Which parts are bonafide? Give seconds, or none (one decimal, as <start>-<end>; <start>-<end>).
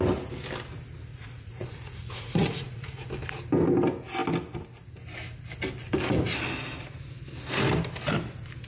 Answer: 0.0-1.1; 3.1-8.7